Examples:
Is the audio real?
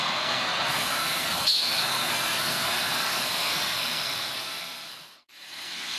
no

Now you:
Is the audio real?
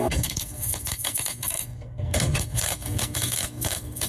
no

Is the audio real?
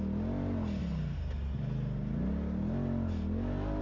yes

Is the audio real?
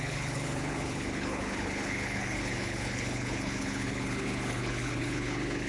no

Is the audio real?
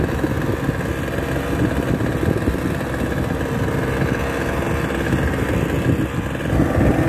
yes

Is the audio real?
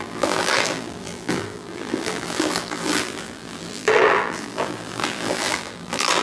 no